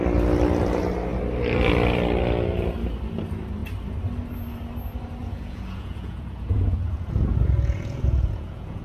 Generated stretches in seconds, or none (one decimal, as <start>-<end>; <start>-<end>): 5.2-8.8